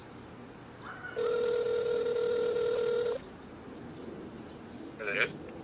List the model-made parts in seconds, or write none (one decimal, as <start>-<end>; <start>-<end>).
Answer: none